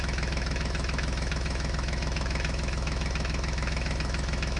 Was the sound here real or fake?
fake